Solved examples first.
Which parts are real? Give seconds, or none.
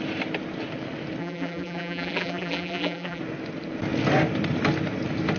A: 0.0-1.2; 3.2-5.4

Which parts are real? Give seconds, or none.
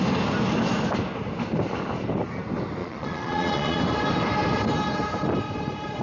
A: 0.0-2.8; 3.8-6.0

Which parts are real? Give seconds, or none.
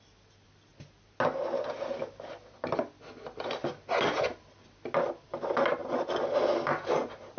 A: 0.0-7.4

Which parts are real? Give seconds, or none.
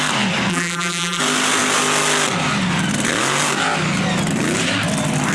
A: 0.0-0.5; 1.2-5.3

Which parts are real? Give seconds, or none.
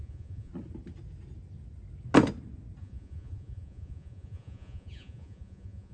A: 0.5-2.8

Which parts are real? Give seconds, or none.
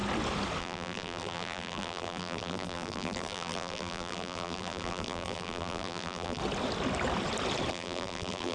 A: 0.0-0.6; 6.4-7.7